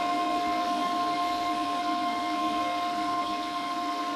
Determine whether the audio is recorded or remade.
remade